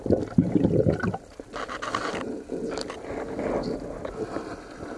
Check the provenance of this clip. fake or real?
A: real